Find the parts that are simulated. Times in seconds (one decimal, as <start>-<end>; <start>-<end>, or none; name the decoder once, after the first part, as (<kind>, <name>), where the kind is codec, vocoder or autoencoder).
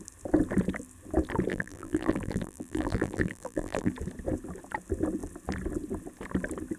1.5-3.9 (vocoder, BigVGAN v2)